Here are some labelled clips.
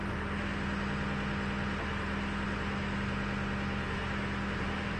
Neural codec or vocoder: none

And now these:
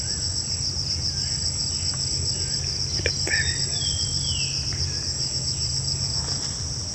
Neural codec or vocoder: none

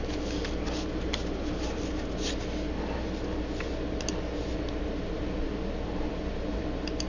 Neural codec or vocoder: none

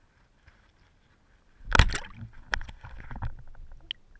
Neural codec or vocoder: none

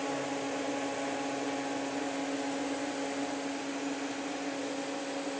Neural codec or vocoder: none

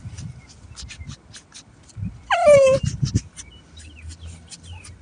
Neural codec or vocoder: vocoder, BigVGAN v2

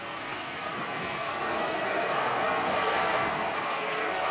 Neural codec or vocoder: codec, SNAC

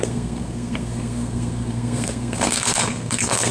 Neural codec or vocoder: codec, SNAC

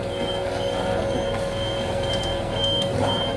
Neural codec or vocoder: codec, SNAC